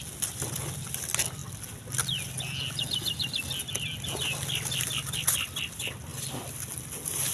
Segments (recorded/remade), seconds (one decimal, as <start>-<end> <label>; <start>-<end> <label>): 0.0-7.3 recorded